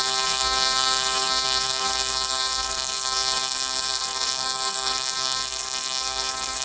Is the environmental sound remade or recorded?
remade